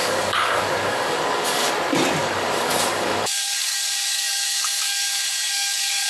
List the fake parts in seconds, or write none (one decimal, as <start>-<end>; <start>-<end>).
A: 0.0-1.7; 2.2-6.1